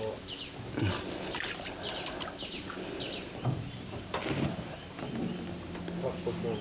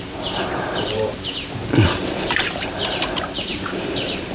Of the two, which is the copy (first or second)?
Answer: second